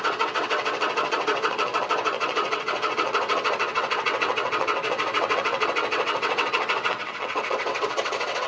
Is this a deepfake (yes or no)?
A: yes